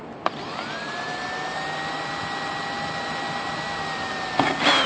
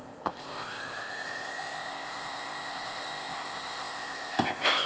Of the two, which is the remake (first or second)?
second